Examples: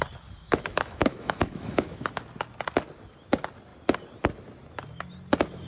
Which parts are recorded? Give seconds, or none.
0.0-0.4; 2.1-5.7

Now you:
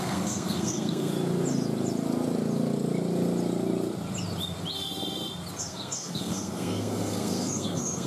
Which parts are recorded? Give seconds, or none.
1.1-5.6

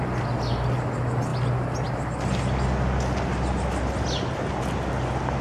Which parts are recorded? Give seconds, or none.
0.0-5.4

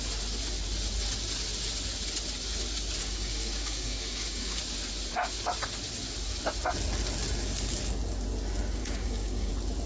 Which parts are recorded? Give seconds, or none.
0.0-3.0; 4.6-8.8; 9.5-9.9

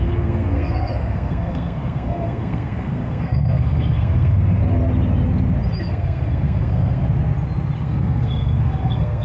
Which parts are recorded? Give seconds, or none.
4.6-5.8; 7.0-7.8